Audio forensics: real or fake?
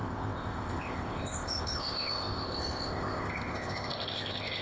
fake